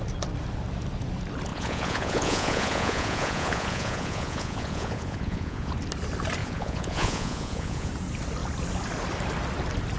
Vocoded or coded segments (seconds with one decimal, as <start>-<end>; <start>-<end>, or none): 1.5-5.7; 6.4-7.9